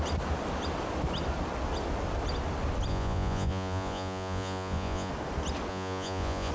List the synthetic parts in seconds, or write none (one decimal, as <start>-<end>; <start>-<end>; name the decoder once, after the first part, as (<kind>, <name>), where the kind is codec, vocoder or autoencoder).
2.9-5.1 (vocoder, Vocos); 5.7-6.5